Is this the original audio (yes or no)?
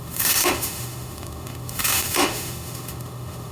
no